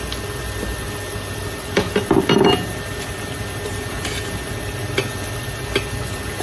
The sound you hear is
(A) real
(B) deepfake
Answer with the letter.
A